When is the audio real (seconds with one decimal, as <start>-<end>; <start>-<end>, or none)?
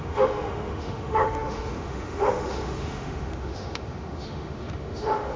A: none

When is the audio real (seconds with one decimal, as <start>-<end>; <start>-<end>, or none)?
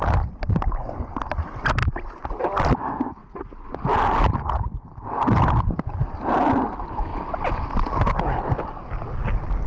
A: 0.0-3.2; 3.8-9.7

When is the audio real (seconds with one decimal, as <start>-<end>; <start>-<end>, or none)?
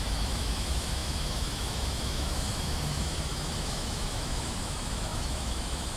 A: none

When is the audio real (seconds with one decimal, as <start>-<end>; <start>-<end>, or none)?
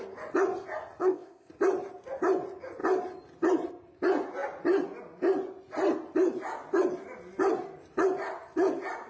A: 0.0-1.0; 1.5-9.1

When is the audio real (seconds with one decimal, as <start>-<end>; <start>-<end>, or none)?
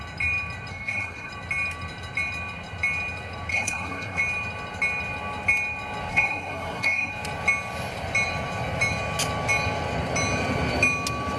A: 0.0-0.7; 1.3-3.5; 4.2-6.1; 7.1-11.4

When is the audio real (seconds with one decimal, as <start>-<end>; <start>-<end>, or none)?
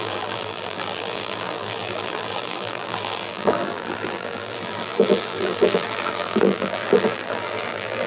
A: none